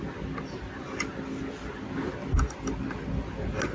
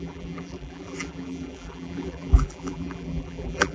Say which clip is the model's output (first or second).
second